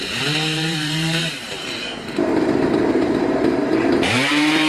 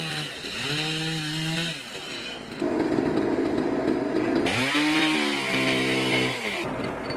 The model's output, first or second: first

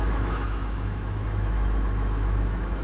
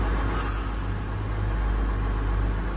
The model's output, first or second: first